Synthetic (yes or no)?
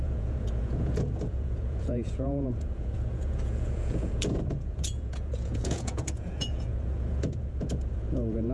yes